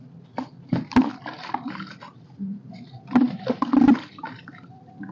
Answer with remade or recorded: recorded